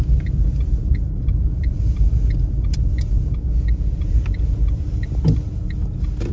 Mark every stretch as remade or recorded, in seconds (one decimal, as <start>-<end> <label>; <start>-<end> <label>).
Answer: 0.0-3.1 recorded; 3.1-4.1 remade; 4.1-6.3 recorded